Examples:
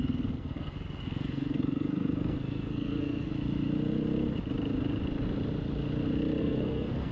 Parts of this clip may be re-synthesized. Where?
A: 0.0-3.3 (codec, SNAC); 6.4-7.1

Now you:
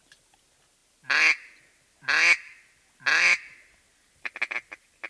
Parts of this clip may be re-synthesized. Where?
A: none

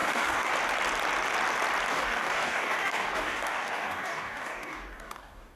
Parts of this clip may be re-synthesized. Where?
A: 0.0-0.5 (codec, DAC); 1.9-5.6

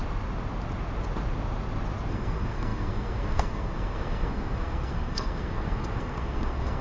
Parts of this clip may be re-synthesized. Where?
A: 2.1-6.8 (codec, SNAC)

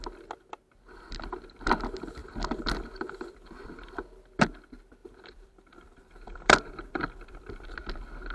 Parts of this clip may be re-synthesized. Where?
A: 2.2-4.0 (vocoder, BigVGAN v2); 5.0-7.7

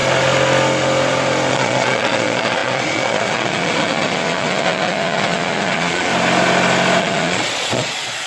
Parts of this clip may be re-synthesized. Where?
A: 1.5-6.1 (vocoder, Vocos); 7.0-8.3